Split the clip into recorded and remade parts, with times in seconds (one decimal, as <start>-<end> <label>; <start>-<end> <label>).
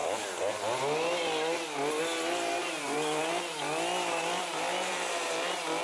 0.0-2.6 recorded; 2.6-3.2 remade; 3.2-4.4 recorded; 4.4-5.3 remade; 5.3-5.8 recorded